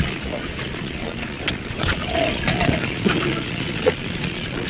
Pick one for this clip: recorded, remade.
remade